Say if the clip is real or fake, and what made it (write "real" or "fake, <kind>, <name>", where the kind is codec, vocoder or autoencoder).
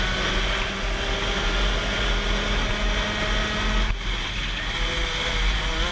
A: real